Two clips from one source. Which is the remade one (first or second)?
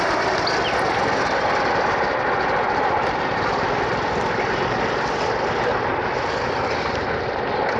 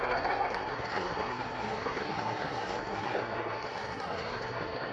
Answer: second